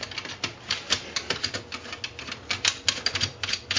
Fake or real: real